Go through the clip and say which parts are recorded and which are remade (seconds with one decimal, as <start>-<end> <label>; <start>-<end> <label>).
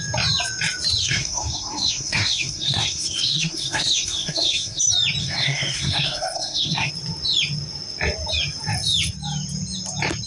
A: 0.0-1.0 recorded; 1.0-4.8 remade; 4.8-5.2 recorded; 5.2-6.9 remade; 6.9-10.3 recorded